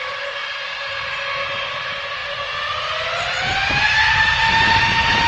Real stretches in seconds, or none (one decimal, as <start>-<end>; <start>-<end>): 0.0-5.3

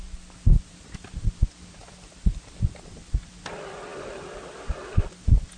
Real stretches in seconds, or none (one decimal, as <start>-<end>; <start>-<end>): 0.0-0.5; 1.2-1.8; 3.1-3.9

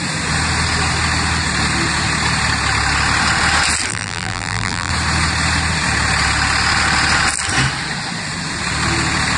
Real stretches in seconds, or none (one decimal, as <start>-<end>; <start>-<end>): 0.0-3.9; 4.9-9.4